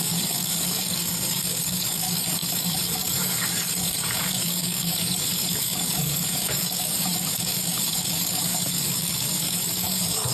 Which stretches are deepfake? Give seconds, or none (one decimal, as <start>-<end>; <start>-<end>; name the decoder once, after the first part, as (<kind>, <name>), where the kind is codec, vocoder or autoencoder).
0.0-10.3 (codec, DAC)